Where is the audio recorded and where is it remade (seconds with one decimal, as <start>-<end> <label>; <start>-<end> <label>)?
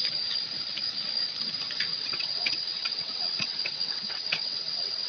0.0-1.9 recorded; 1.9-5.1 remade